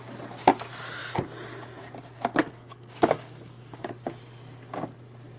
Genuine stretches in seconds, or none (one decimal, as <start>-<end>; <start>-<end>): 0.0-2.4; 3.9-5.4